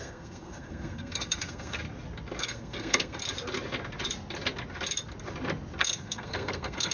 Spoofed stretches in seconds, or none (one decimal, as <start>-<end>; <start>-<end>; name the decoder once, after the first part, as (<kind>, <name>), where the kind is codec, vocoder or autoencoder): 0.0-1.8 (codec, SNAC); 2.4-3.2; 5.8-6.9